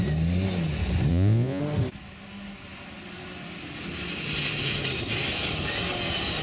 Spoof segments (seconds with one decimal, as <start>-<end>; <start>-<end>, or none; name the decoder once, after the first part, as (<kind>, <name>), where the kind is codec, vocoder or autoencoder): 1.1-1.6 (vocoder, Vocos)